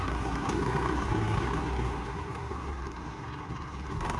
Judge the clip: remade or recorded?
remade